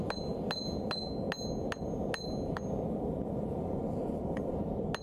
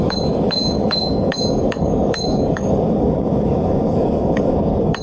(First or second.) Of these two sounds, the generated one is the second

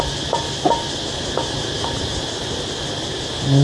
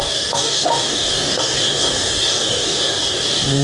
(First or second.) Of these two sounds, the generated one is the second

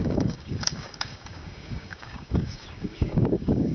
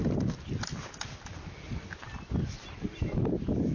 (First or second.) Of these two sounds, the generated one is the first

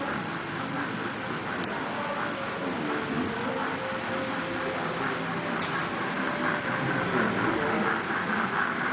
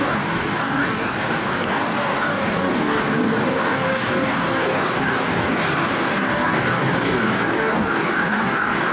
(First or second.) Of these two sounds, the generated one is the second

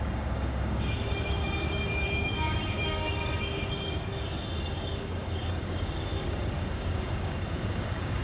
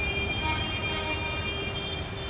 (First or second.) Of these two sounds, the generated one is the first